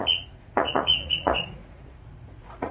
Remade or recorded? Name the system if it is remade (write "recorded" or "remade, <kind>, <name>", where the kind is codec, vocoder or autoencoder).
remade, vocoder, Vocos